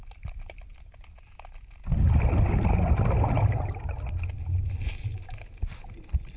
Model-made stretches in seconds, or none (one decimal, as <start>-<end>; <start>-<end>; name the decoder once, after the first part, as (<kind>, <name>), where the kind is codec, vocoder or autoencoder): none